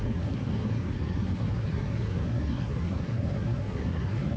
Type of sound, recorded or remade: remade